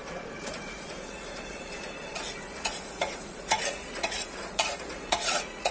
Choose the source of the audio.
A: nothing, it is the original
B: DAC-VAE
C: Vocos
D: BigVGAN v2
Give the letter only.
C